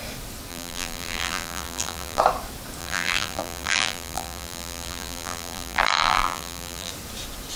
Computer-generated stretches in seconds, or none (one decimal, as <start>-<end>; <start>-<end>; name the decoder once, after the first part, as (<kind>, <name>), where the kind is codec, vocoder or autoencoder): 0.5-2.2 (vocoder, BigVGAN v2); 2.8-6.9